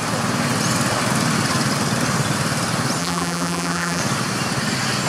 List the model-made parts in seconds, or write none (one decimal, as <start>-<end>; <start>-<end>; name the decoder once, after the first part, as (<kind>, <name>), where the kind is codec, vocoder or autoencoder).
3.0-4.0 (vocoder, BigVGAN v2)